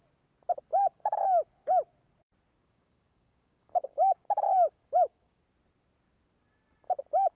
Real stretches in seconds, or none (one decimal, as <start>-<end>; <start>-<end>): 0.0-0.7; 1.2-2.6; 5.4-7.4